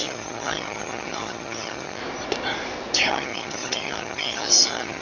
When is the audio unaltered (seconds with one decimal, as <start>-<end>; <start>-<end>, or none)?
2.0-3.1

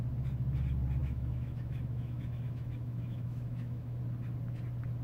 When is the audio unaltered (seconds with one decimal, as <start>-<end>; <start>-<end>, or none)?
0.0-1.0; 4.0-5.0